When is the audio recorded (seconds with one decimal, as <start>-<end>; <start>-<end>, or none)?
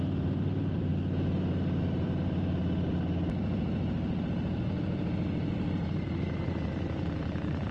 0.9-1.8; 2.6-4.2